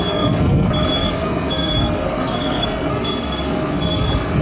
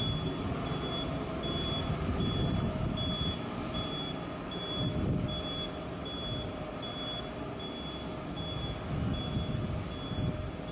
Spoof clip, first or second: first